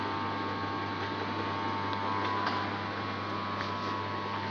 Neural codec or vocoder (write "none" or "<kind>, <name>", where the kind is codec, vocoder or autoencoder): none